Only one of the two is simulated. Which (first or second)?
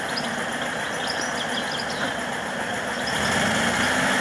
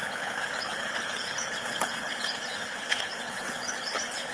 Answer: second